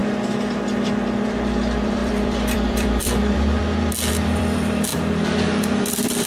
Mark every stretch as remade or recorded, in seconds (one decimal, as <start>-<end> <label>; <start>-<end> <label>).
0.0-0.9 recorded; 0.9-3.6 remade; 3.6-4.1 recorded; 4.1-4.9 remade; 4.9-5.7 recorded; 5.7-6.3 remade

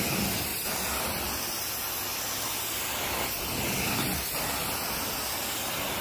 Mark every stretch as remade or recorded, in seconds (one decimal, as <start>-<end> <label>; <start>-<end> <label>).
0.0-6.0 recorded